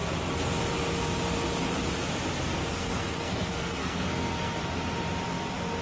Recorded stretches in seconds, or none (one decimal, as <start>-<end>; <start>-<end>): 0.0-2.6; 4.6-5.8